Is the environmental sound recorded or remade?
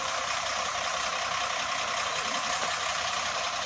recorded